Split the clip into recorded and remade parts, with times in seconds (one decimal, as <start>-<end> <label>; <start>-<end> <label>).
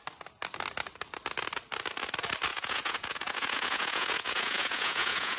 0.0-2.5 recorded; 2.5-5.4 remade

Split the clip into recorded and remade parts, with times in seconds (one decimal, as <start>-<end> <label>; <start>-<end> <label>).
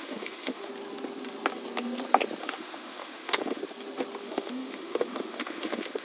0.0-0.7 remade; 0.7-2.4 recorded; 2.4-3.6 remade; 3.6-4.2 recorded; 4.2-6.0 remade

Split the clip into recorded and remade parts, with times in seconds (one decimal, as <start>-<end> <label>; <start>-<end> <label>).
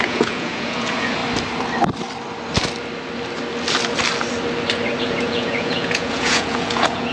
0.0-1.2 remade; 1.2-5.0 recorded; 5.0-7.1 remade